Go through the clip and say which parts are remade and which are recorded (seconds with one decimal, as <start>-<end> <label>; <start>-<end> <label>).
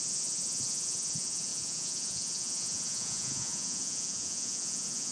0.0-5.1 remade